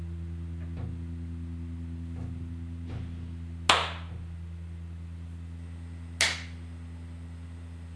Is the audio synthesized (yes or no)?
no